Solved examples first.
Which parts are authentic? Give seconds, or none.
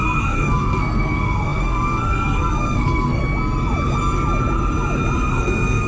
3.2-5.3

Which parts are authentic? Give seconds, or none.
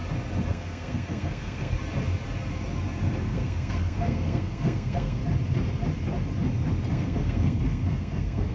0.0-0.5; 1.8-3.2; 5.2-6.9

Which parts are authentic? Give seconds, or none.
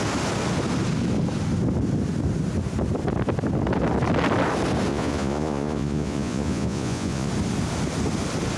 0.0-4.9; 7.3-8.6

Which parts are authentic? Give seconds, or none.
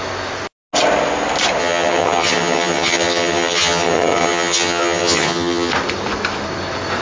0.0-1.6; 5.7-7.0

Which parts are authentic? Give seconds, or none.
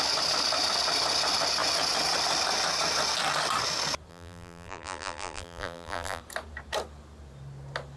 0.0-4.1; 6.2-8.0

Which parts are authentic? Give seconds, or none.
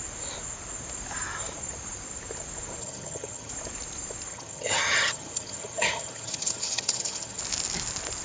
0.0-2.8; 3.5-4.3; 7.4-8.2